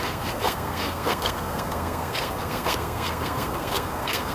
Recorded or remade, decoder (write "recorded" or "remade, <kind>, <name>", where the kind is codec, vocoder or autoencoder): remade, codec, SNAC